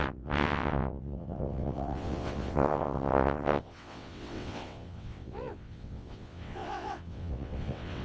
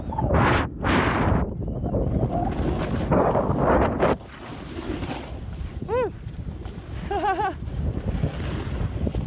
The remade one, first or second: first